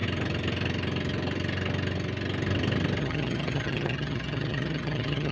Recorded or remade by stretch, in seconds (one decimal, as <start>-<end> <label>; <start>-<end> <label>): 0.0-3.0 recorded; 3.0-5.3 remade